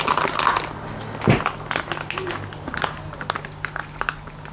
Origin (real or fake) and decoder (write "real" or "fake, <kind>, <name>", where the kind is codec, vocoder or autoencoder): real